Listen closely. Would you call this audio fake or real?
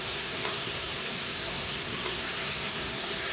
fake